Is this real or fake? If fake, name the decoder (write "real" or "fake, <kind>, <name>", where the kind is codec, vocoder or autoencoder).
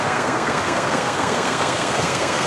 fake, codec, SNAC